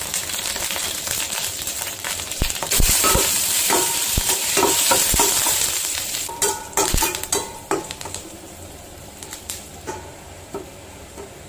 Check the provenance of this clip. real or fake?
fake